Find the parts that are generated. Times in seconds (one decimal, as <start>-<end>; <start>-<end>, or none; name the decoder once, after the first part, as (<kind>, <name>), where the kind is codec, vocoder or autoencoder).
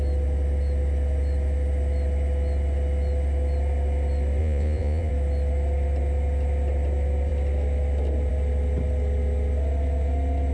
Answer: 4.4-5.1 (vocoder, Vocos)